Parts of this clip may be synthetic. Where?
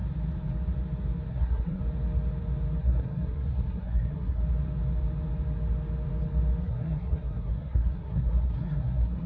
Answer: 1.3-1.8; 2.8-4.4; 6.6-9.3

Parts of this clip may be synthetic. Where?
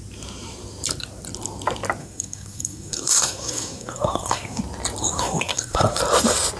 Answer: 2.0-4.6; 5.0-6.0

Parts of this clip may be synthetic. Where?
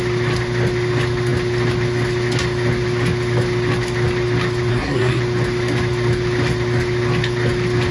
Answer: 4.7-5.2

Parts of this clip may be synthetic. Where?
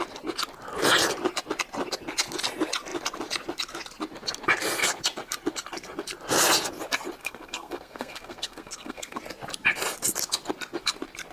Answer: 7.2-9.2